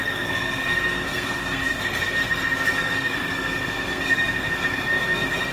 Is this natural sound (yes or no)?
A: no